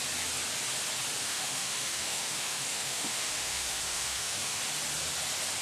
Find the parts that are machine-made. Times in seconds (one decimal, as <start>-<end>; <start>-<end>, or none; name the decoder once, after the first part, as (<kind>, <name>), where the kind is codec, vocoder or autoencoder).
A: 1.2-4.6 (autoencoder, DAC-VAE)